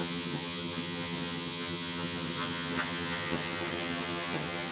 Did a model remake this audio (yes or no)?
yes